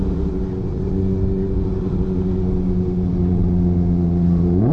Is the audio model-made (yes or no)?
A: no